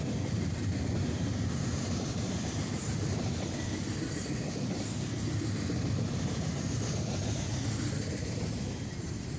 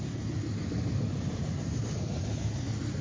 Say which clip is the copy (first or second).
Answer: first